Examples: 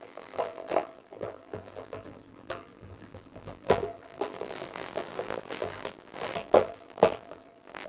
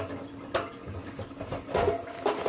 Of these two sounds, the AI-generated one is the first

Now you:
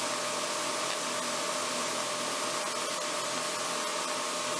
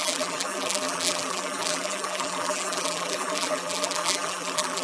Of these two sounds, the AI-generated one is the second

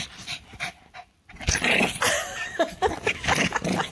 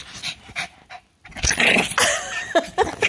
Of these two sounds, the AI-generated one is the first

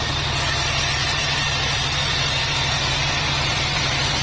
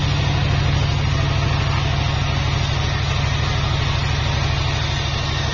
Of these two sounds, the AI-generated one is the first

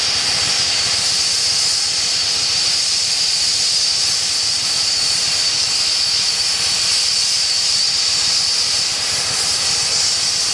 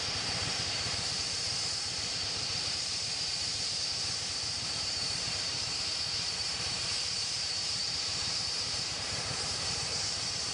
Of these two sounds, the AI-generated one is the second